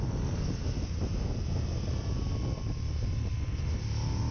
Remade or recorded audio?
recorded